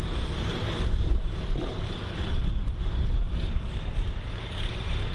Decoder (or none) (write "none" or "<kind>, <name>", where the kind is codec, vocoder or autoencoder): vocoder, BigVGAN v2